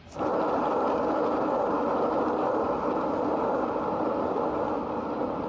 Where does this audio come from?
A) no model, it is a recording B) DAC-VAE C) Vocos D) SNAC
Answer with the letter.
A